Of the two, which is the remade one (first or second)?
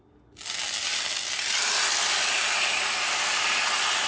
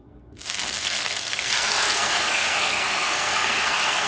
second